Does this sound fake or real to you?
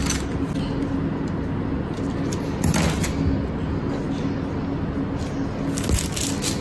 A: real